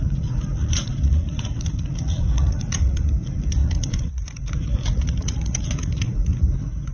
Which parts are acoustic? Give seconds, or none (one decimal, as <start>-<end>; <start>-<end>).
none